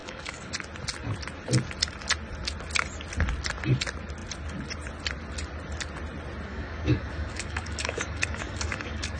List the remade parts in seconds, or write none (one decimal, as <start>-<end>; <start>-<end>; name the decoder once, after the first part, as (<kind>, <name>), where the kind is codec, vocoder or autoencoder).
0.0-0.5 (codec, DAC); 6.5-9.2